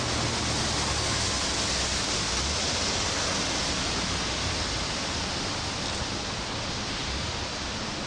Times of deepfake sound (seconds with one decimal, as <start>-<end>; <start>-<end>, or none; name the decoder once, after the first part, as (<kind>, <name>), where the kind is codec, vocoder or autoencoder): none